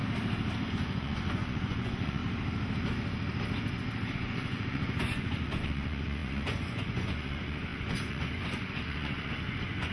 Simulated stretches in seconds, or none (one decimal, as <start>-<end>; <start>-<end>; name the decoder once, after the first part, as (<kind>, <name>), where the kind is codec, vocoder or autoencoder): 0.7-2.2 (vocoder, Vocos); 4.1-9.9